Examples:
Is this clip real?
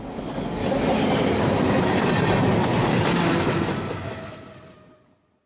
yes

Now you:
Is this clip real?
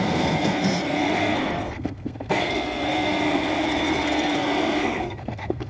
no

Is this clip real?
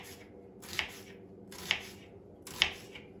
yes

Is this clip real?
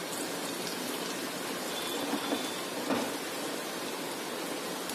yes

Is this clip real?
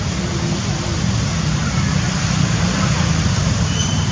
yes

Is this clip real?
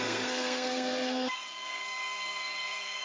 no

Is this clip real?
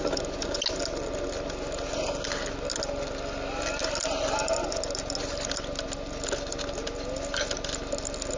yes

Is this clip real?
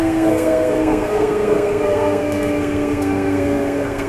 no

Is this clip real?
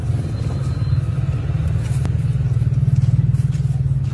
yes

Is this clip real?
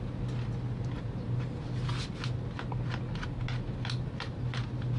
yes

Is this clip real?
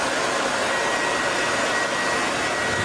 yes